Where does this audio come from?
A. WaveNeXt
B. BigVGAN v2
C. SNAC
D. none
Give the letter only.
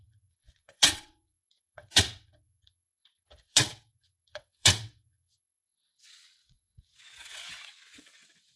A